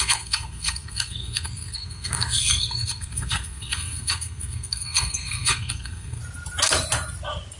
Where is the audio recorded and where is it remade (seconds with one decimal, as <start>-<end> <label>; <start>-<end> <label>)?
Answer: 0.0-6.2 remade; 6.2-7.6 recorded